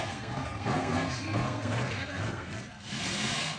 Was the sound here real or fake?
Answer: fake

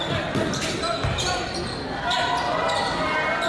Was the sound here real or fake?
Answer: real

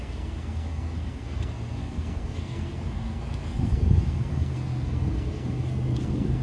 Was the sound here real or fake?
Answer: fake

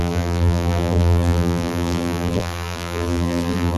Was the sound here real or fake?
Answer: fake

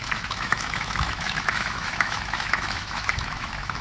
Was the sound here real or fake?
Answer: fake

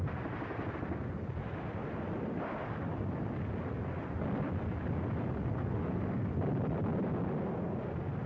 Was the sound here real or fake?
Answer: real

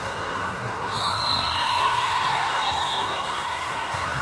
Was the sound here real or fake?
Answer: fake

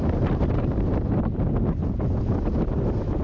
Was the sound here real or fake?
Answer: real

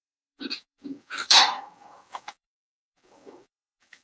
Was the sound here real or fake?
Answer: fake